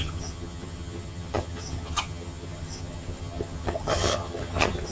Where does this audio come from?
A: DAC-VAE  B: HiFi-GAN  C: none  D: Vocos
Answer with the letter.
B